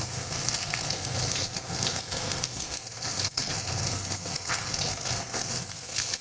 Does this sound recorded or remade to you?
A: remade